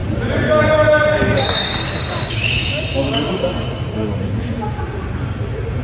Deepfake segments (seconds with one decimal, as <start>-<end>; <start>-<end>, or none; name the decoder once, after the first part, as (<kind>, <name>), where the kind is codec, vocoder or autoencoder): 0.6-3.4 (codec, DAC)